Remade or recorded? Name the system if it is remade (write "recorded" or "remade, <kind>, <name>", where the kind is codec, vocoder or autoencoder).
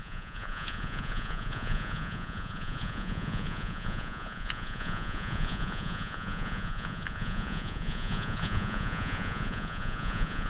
remade, vocoder, Vocos